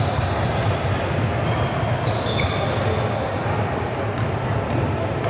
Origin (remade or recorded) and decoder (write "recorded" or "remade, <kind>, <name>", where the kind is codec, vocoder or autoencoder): recorded